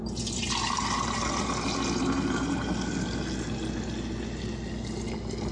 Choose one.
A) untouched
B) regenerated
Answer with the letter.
A